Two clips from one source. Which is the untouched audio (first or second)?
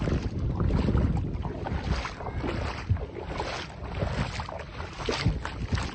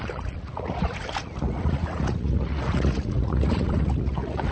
first